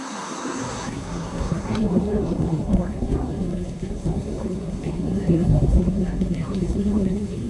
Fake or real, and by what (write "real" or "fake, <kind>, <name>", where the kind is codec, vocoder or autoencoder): fake, codec, SNAC